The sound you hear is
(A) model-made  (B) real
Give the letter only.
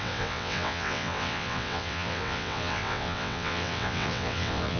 A